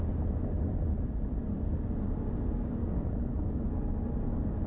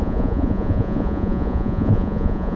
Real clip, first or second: first